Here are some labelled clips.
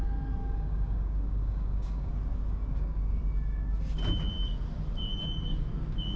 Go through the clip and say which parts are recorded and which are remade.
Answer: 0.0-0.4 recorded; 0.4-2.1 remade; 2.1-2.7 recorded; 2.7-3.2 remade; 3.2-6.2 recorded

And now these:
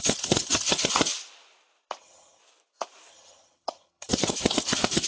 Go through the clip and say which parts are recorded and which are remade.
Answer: 0.0-1.1 remade; 1.1-2.0 recorded; 2.0-2.4 remade; 2.4-3.1 recorded; 3.1-5.1 remade

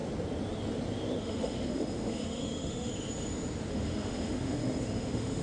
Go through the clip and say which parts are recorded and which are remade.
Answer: 0.0-1.2 recorded; 1.2-2.9 remade; 2.9-3.7 recorded; 3.7-5.4 remade

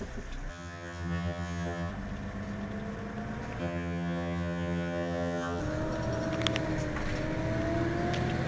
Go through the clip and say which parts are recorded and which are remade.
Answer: 0.0-0.5 recorded; 0.5-1.9 remade; 1.9-3.6 recorded; 3.6-5.6 remade; 5.6-8.5 recorded